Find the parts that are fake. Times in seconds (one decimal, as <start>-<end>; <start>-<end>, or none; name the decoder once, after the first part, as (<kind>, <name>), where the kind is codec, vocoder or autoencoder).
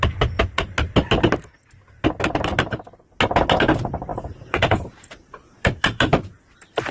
4.1-6.5 (vocoder, Vocos)